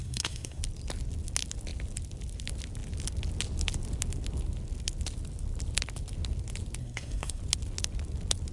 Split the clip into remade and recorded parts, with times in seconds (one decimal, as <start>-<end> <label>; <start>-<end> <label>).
0.0-0.6 remade; 0.6-6.8 recorded; 6.8-7.4 remade; 7.4-8.5 recorded